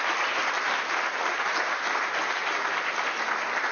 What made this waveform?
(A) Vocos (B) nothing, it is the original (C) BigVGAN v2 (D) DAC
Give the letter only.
B